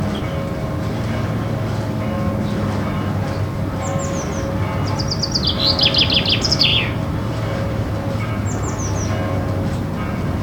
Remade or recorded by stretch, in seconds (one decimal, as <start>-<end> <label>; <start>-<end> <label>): 0.0-6.7 recorded; 6.7-8.3 remade; 8.3-10.4 recorded